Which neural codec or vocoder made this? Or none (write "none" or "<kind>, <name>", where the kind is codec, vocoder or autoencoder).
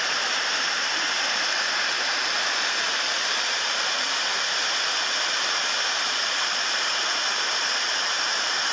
vocoder, BigVGAN v2